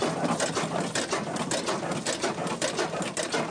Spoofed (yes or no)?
no